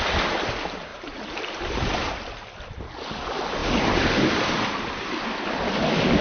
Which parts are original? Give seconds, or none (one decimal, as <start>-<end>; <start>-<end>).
0.0-0.9; 2.2-3.6; 4.6-6.2